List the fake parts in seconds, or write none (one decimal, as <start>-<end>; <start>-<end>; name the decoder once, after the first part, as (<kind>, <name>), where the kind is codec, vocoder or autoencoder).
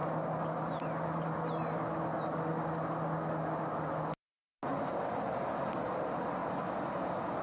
none